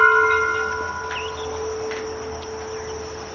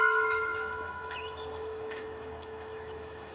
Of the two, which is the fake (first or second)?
second